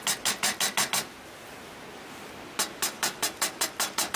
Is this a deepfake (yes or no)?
no